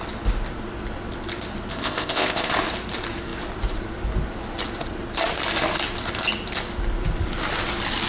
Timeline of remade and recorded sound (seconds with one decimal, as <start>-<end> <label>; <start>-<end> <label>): 0.0-1.7 recorded; 1.7-2.5 remade; 2.5-8.1 recorded